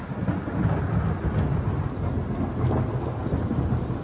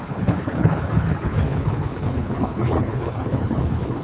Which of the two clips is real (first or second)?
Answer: first